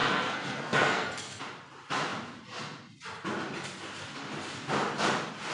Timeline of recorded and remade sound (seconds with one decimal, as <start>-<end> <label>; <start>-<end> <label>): 0.0-1.4 remade; 1.4-5.5 recorded